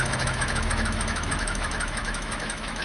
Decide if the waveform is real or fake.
fake